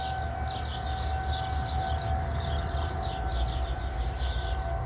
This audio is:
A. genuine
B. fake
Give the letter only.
A